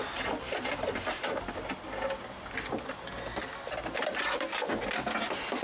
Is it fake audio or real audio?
real